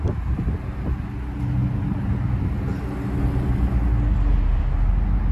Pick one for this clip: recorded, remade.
recorded